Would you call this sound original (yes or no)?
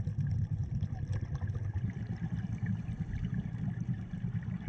yes